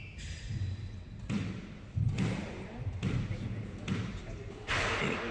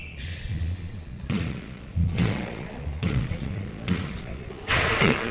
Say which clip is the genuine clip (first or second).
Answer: first